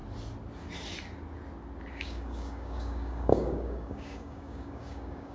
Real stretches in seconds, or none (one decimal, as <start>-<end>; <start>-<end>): 0.0-1.9